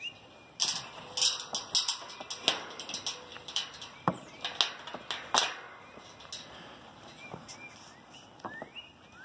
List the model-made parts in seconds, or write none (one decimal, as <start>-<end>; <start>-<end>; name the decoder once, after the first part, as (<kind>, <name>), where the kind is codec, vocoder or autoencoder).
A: 3.3-4.3 (vocoder, BigVGAN v2)